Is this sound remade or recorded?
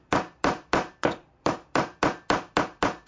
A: remade